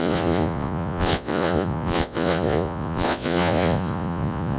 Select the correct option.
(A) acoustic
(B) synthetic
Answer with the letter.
B